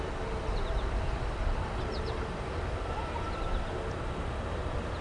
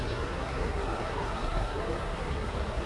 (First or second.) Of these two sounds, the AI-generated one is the second